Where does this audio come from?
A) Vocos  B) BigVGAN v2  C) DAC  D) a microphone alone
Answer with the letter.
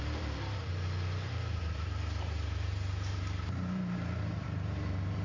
B